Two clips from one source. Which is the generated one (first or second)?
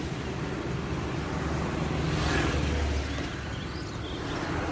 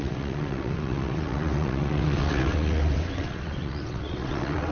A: second